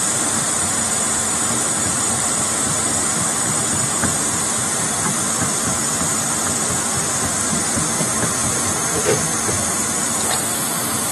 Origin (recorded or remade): remade